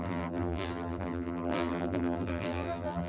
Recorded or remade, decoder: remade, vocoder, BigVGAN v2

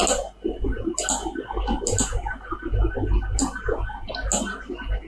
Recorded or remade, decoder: recorded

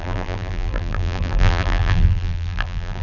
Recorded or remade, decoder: remade, vocoder, BigVGAN v2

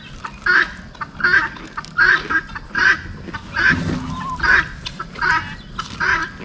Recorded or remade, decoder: recorded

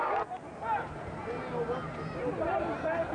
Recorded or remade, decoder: recorded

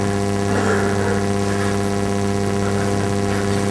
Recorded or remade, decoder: recorded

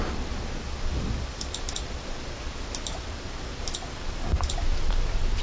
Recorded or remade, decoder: recorded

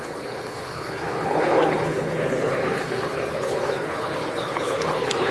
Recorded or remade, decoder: remade, codec, HILCodec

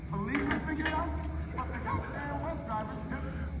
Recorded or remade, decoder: recorded